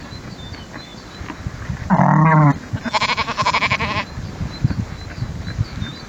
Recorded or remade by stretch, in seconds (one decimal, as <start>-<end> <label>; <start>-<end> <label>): 0.0-6.1 recorded